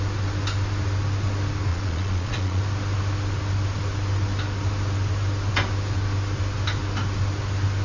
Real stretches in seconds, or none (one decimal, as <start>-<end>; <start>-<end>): 0.0-1.7; 2.6-7.8